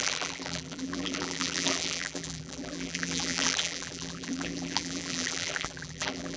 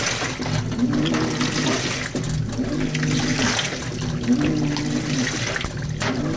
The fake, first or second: first